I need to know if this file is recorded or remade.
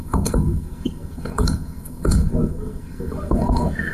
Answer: remade